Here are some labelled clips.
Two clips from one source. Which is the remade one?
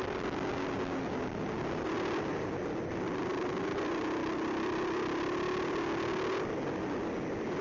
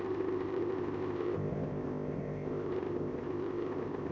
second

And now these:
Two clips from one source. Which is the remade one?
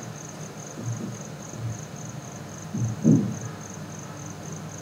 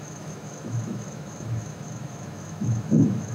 second